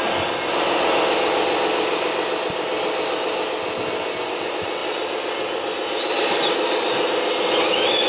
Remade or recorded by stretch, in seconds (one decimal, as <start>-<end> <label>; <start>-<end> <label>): 0.0-4.8 recorded; 4.8-8.1 remade